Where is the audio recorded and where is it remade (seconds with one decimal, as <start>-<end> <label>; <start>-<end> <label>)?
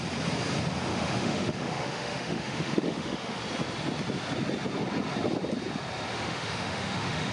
0.0-0.9 recorded; 0.9-3.4 remade; 3.4-6.1 recorded; 6.1-7.3 remade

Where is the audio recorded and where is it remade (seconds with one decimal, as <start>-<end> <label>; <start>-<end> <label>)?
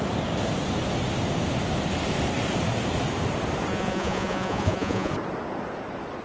0.0-3.7 recorded; 3.7-5.1 remade; 5.1-6.2 recorded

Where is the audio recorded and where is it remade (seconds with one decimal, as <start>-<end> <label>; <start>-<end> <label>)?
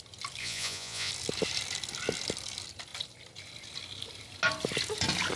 0.0-0.4 recorded; 0.4-1.1 remade; 1.1-5.4 recorded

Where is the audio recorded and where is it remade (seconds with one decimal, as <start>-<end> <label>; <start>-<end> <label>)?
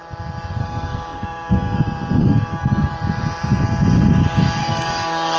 0.0-0.6 recorded; 0.6-1.8 remade; 1.8-2.2 recorded; 2.2-2.9 remade; 2.9-4.6 recorded; 4.6-5.4 remade